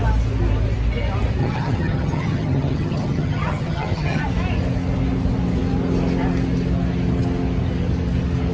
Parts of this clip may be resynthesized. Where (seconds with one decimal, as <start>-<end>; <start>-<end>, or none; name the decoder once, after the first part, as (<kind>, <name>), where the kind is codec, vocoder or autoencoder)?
1.4-4.2 (vocoder, HiFi-GAN)